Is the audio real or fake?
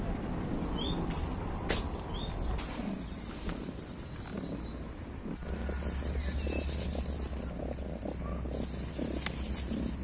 real